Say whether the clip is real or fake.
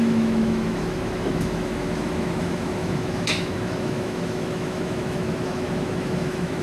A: fake